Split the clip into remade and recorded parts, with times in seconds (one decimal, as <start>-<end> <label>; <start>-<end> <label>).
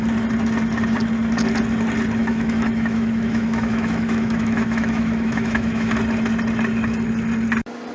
0.0-2.2 recorded; 2.2-5.9 remade; 5.9-7.9 recorded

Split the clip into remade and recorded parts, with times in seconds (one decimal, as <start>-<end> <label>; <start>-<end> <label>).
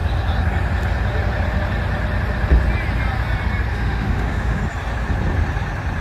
0.0-3.7 recorded; 3.7-4.6 remade; 4.6-6.0 recorded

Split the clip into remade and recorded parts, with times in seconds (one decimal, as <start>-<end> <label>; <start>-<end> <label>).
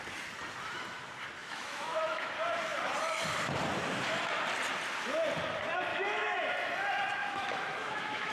0.0-1.4 recorded; 1.4-2.3 remade; 2.3-5.9 recorded; 5.9-6.5 remade; 6.5-7.2 recorded; 7.2-8.3 remade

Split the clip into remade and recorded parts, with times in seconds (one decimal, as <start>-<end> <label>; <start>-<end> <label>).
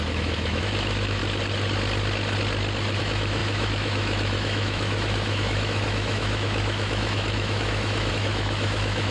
0.0-1.2 remade; 1.2-3.0 recorded; 3.0-9.1 remade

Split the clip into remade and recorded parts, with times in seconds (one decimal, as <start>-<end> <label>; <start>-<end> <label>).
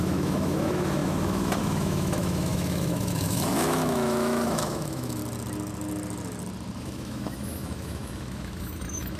0.0-5.2 remade; 5.2-6.8 recorded; 6.8-9.2 remade